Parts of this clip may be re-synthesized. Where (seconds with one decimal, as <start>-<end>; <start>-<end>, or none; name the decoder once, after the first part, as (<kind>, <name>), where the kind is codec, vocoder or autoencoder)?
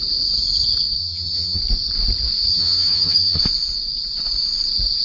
1.0-1.6 (vocoder, HiFi-GAN); 2.5-3.4